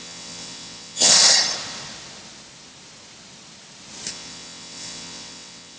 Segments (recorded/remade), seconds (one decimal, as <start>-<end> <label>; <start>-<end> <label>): 0.0-1.1 remade; 1.1-4.1 recorded; 4.1-5.8 remade